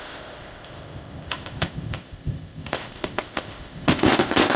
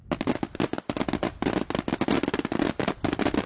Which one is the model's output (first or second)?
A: first